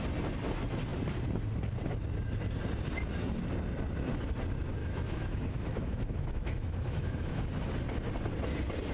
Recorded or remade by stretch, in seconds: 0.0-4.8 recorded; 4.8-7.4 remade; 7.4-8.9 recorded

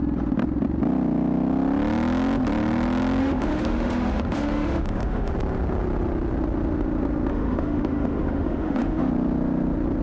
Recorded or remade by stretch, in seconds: 0.0-3.2 recorded; 3.2-5.3 remade; 5.3-7.3 recorded; 7.3-9.1 remade; 9.1-10.0 recorded

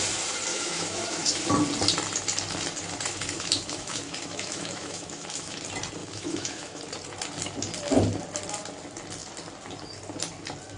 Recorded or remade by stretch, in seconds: 0.0-0.5 recorded; 0.5-1.5 remade; 1.5-3.1 recorded; 3.1-5.6 remade; 5.6-6.0 recorded; 6.0-6.8 remade; 6.8-10.8 recorded

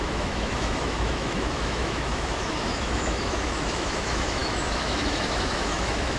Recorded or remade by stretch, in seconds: 0.0-6.2 remade

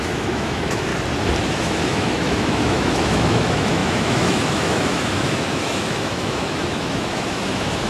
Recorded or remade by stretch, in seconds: 0.0-0.9 remade; 0.9-1.5 recorded; 1.5-7.9 remade

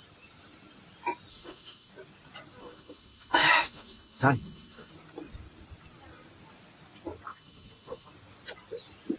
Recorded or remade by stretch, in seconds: 0.0-1.3 recorded; 1.3-1.9 remade; 1.9-2.6 recorded; 2.6-4.9 remade; 4.9-7.3 recorded; 7.3-8.1 remade; 8.1-9.2 recorded